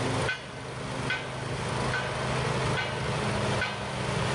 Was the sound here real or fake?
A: real